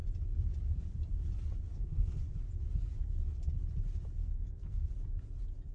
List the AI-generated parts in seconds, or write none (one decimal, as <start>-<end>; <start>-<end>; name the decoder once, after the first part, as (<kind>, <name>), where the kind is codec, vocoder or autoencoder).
1.7-2.2 (codec, SNAC); 4.2-4.9